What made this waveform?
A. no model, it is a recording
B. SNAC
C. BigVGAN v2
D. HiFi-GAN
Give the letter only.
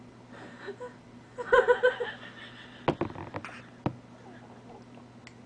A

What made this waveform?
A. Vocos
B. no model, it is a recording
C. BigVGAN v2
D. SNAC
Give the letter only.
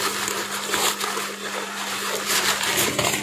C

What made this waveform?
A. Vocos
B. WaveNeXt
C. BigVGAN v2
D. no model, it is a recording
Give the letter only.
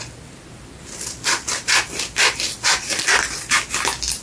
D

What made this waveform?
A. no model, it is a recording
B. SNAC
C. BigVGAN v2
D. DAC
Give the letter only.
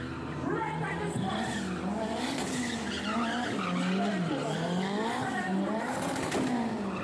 A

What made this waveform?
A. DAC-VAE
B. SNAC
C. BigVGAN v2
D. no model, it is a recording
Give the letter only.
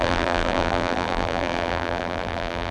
C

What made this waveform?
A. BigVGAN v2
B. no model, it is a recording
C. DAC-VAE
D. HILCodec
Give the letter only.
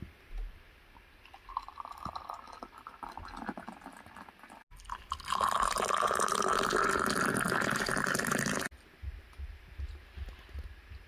B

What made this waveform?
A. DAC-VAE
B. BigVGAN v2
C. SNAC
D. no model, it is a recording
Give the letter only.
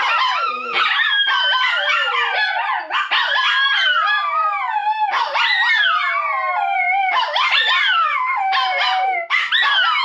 D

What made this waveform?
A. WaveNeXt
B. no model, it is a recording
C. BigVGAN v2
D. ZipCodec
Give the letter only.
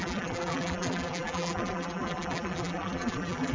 C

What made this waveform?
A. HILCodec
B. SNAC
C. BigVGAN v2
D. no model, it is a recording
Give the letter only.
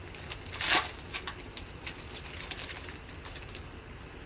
D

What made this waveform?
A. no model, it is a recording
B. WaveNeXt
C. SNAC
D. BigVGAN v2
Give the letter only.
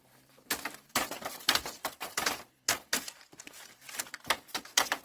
D